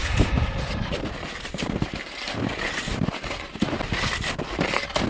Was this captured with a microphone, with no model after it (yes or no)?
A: yes